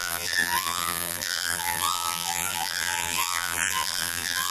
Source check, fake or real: fake